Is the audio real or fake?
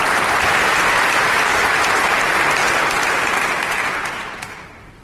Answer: real